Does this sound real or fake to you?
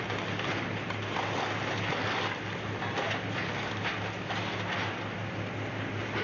real